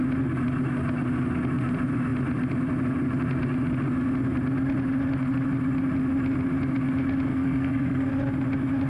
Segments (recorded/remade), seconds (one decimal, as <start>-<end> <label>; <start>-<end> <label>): 0.0-7.3 recorded; 7.3-8.1 remade; 8.1-8.9 recorded